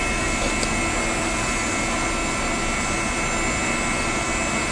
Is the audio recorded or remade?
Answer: recorded